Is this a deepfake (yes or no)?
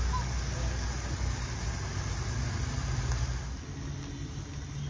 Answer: no